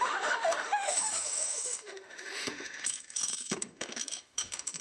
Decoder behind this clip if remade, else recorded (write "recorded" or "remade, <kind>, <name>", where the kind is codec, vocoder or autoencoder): remade, autoencoder, DAC-VAE